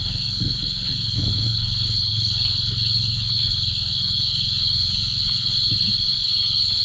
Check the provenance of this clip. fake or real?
fake